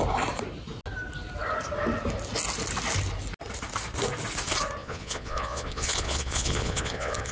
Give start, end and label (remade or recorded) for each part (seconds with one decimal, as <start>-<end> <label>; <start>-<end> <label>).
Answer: 0.0-4.8 recorded; 4.8-7.3 remade